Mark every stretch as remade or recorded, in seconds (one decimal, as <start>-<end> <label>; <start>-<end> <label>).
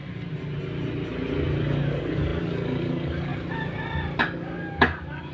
0.0-1.6 recorded; 1.6-3.3 remade; 3.3-4.2 recorded; 4.2-5.3 remade